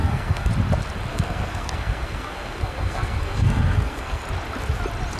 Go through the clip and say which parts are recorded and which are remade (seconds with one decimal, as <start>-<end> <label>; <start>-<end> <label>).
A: 0.0-0.5 remade; 0.5-1.1 recorded; 1.1-4.2 remade; 4.2-5.2 recorded